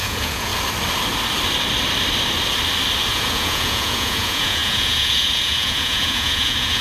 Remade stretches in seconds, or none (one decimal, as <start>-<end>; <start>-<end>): 0.0-0.5; 3.1-6.8